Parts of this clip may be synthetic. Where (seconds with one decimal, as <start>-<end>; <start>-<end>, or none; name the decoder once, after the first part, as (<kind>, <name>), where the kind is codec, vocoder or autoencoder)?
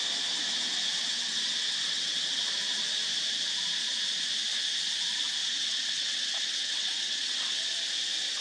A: 0.9-2.4 (vocoder, WaveNeXt); 5.4-7.7